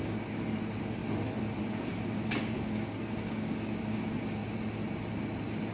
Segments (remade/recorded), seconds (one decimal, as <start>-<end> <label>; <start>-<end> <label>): 0.0-1.0 remade; 1.0-1.6 recorded; 1.6-4.4 remade; 4.4-5.7 recorded